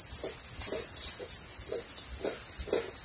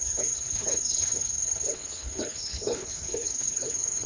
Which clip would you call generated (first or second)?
second